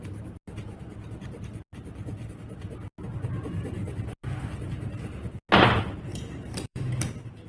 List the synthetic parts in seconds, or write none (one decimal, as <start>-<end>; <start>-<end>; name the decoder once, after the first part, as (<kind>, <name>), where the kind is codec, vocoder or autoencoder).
6.1-6.9 (vocoder, BigVGAN v2)